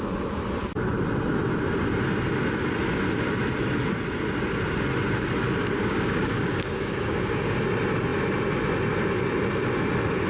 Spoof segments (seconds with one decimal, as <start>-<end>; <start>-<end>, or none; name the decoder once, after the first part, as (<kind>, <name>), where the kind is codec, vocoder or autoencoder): 5.6-7.6 (codec, DAC)